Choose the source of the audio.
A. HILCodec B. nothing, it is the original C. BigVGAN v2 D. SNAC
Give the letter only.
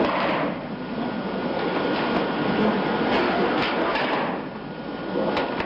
B